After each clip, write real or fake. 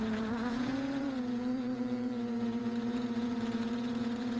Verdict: fake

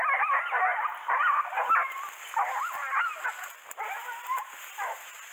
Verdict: real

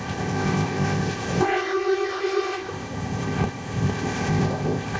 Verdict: fake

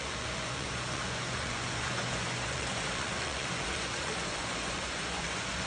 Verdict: fake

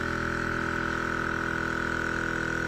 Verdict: fake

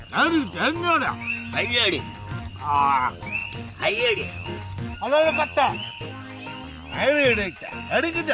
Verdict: real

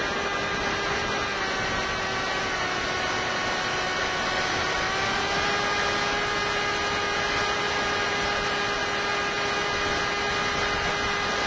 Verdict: real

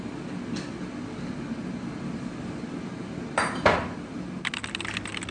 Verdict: real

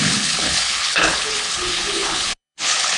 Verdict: fake